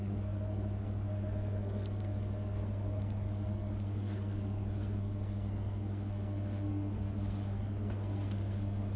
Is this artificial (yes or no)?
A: yes